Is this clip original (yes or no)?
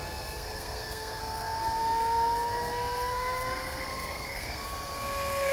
no